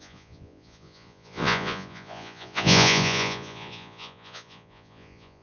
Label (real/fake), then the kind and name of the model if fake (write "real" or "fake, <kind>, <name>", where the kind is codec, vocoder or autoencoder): fake, vocoder, Vocos